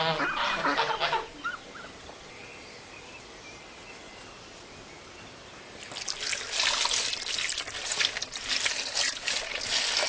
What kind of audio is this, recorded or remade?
recorded